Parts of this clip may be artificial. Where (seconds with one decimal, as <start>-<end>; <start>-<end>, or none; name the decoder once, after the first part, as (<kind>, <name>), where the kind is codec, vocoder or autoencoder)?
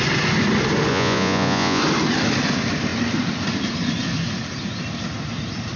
0.9-1.8 (vocoder, Vocos)